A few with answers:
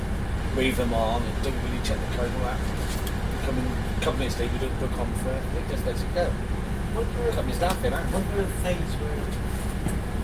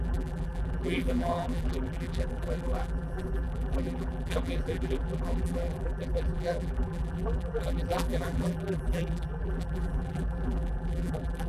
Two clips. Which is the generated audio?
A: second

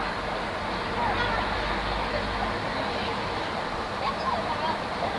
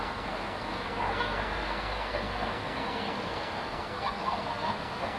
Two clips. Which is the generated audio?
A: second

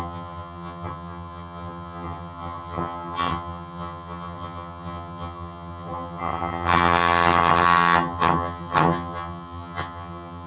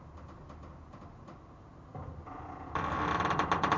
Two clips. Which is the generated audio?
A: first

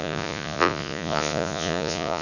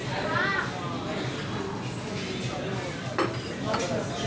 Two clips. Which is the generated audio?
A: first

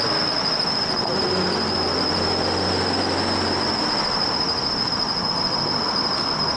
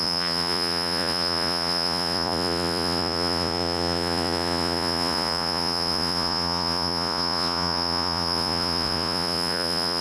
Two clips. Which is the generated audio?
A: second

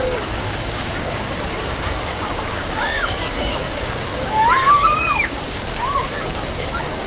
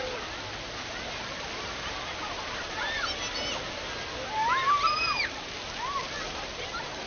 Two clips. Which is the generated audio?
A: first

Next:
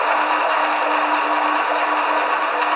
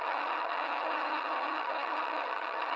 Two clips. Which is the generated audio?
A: second